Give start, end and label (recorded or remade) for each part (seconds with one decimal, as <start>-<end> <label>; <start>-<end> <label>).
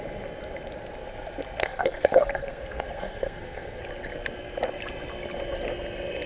0.0-1.6 recorded; 1.6-3.8 remade; 3.8-6.3 recorded